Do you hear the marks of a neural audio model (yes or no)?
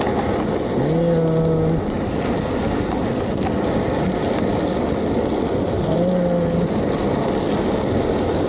no